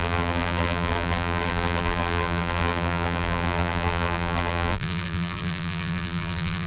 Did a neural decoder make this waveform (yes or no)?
yes